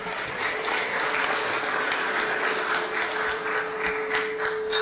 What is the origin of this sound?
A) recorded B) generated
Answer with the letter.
A